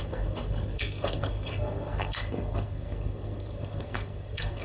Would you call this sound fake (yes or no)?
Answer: yes